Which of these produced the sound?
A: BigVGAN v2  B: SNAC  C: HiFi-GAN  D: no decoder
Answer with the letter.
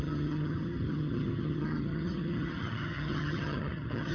C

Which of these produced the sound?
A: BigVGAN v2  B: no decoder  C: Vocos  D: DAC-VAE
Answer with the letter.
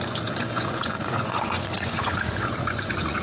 C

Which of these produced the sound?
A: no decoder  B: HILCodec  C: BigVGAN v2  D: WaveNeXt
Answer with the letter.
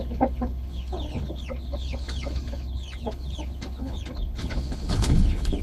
B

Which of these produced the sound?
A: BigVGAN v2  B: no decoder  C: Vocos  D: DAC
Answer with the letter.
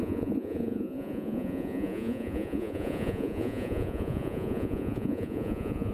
C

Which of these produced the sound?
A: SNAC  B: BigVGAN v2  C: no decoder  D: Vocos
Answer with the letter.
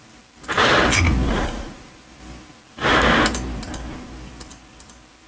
C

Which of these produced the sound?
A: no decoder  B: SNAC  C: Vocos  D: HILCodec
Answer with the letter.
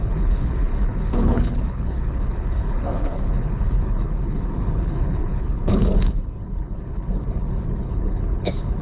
D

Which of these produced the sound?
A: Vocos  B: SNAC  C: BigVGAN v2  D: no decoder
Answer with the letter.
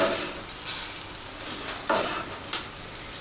D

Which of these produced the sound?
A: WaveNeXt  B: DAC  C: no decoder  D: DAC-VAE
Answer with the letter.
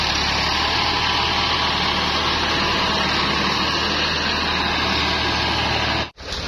C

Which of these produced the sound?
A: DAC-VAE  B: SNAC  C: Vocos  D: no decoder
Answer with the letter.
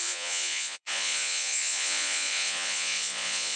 C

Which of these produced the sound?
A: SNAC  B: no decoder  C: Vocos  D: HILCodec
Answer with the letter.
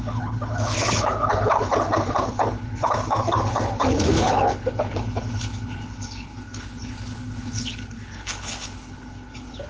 D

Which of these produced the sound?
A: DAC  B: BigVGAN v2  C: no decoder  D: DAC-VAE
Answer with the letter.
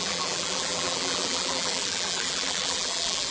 B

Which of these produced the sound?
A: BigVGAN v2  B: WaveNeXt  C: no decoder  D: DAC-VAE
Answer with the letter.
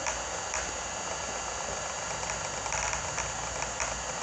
C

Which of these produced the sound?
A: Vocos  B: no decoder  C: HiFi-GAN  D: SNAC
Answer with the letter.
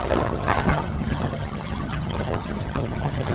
C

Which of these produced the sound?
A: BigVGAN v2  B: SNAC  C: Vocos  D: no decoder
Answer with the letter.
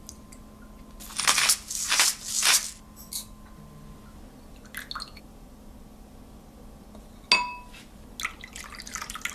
D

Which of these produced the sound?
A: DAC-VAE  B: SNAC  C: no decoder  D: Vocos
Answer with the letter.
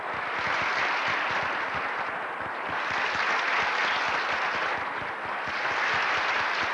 C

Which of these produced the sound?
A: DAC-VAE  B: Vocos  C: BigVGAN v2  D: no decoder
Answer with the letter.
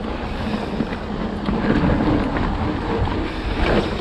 D